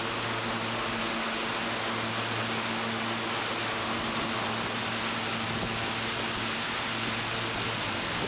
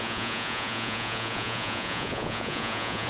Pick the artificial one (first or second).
second